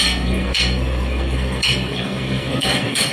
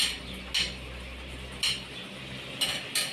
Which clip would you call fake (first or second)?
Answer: first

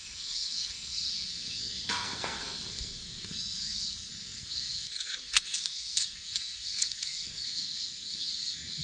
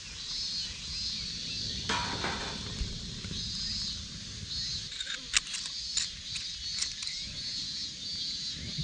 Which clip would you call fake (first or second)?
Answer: first